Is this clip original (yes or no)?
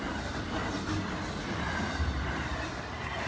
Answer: yes